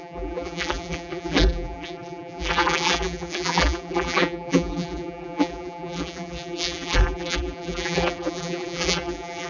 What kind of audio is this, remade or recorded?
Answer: remade